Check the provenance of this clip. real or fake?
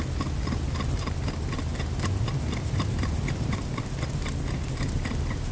real